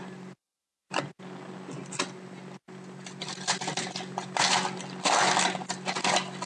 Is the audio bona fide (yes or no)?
yes